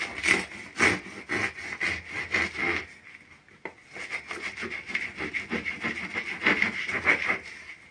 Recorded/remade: recorded